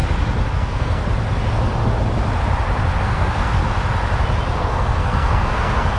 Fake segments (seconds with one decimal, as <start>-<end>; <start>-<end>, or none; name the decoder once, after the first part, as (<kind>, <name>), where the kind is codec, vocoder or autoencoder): 0.5-1.0 (codec, SNAC); 3.0-3.6; 4.6-6.0